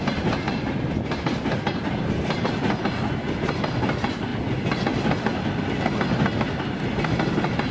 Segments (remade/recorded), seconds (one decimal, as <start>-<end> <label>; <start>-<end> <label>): 0.0-7.7 recorded